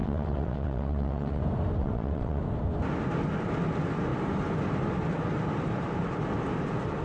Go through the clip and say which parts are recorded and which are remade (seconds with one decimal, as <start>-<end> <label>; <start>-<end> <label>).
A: 0.0-1.4 remade; 1.4-1.8 recorded; 1.8-2.4 remade; 2.4-7.0 recorded